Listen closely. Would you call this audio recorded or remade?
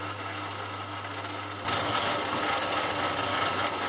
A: recorded